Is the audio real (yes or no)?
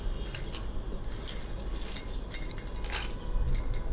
yes